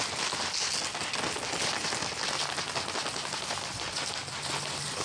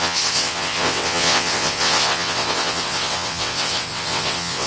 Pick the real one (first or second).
first